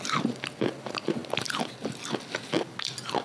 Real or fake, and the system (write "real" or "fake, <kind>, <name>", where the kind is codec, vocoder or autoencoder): real